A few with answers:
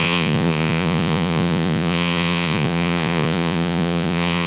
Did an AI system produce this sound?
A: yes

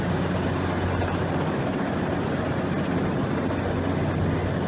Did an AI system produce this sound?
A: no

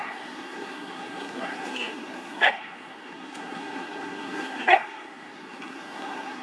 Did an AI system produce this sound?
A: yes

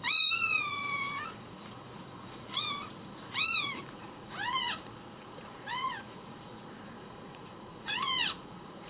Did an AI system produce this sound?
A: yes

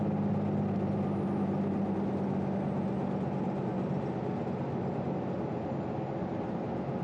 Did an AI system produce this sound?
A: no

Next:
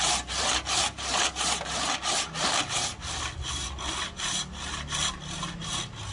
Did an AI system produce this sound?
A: no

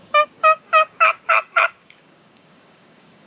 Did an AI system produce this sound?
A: yes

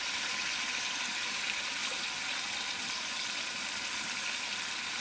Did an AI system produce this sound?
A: no